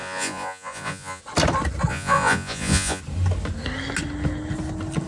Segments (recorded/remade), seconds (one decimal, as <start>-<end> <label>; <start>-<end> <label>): 0.0-1.2 remade; 1.2-1.9 recorded; 1.9-3.0 remade; 3.0-5.1 recorded